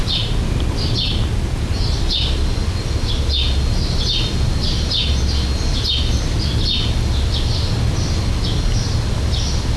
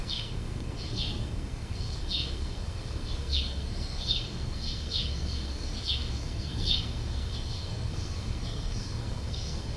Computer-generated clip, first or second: second